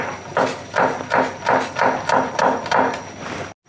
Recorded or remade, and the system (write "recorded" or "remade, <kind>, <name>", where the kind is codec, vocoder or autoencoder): recorded